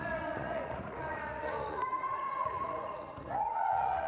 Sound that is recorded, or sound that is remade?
remade